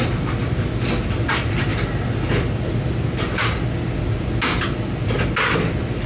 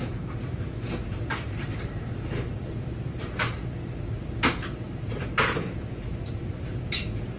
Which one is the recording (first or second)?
first